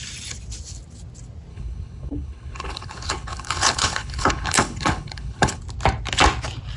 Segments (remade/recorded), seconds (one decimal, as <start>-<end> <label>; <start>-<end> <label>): 0.0-1.5 recorded; 1.5-5.6 remade; 5.6-6.8 recorded